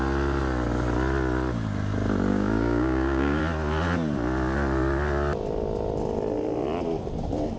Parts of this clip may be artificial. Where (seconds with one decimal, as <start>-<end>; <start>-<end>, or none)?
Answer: 2.3-3.4